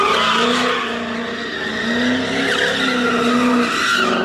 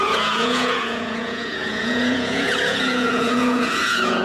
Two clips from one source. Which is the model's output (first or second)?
second